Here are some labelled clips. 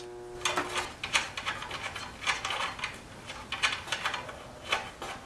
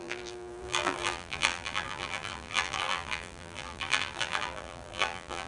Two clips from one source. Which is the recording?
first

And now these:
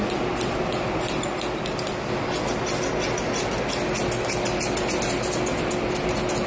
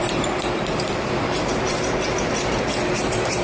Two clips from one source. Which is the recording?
first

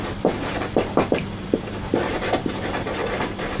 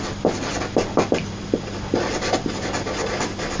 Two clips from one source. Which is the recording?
second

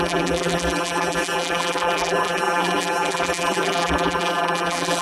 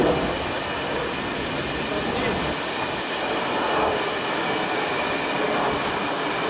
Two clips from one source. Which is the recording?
second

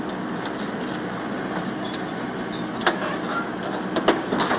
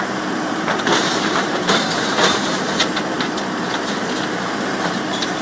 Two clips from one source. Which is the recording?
first